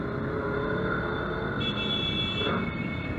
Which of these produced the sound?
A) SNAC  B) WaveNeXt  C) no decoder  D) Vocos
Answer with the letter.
C